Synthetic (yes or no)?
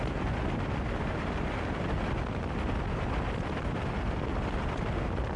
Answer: no